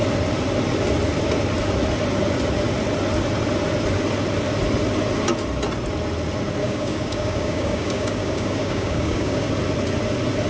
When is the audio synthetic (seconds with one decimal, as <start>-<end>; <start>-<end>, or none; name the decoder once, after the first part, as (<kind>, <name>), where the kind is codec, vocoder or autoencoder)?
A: 6.6-9.5 (codec, DAC)